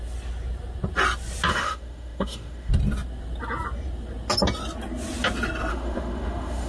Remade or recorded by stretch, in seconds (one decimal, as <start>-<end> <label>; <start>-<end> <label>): 0.0-1.5 recorded; 1.5-2.7 remade; 2.7-5.7 recorded; 5.7-6.7 remade

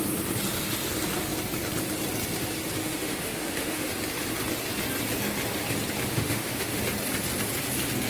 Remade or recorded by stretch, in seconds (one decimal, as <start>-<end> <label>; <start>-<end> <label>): 0.0-2.8 recorded; 2.8-3.9 remade; 3.9-6.1 recorded; 6.1-6.8 remade; 6.8-8.1 recorded

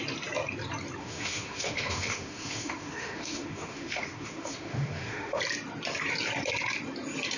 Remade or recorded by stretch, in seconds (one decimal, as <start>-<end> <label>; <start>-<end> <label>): 0.0-1.0 recorded; 1.0-5.4 remade; 5.4-7.4 recorded